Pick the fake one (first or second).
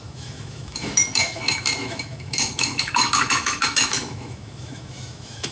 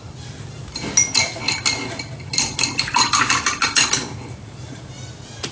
first